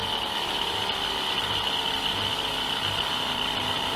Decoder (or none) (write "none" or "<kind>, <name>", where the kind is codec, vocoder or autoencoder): none